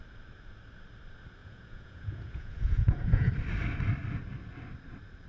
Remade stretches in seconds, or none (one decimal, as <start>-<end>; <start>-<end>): 1.4-3.3